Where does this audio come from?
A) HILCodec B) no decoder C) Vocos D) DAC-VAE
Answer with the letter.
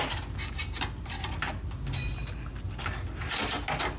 B